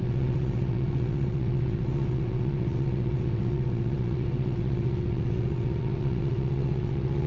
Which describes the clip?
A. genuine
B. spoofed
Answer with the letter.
B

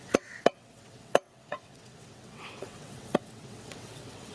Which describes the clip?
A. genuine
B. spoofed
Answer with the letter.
B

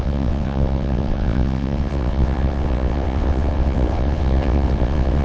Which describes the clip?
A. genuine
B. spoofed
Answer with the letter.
B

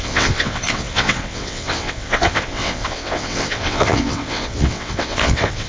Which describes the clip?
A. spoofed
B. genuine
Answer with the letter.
A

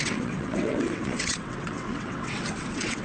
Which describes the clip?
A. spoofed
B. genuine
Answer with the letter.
A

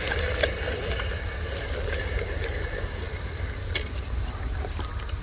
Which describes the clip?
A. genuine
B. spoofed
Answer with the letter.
A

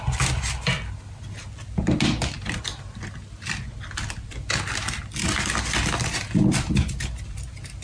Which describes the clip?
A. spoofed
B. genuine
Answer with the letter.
B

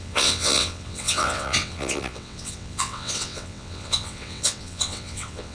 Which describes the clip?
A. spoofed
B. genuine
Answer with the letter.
A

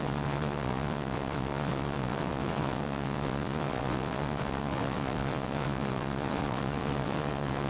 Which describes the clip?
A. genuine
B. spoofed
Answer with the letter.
B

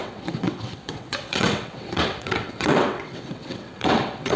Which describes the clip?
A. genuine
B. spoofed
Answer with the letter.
B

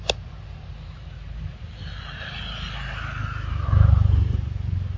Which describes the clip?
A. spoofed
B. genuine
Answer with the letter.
B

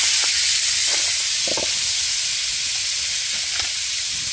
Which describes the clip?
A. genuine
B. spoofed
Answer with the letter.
A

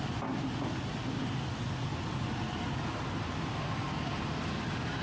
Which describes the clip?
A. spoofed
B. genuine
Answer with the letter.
B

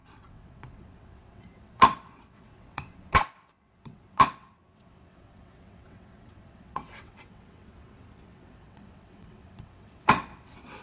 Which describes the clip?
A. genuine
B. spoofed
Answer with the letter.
B